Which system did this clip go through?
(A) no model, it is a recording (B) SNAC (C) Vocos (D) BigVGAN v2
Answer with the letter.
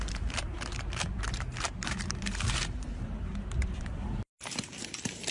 D